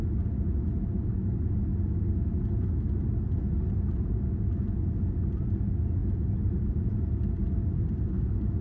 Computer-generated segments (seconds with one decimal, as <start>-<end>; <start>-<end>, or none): none